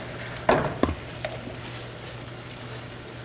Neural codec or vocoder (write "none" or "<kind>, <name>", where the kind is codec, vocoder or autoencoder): none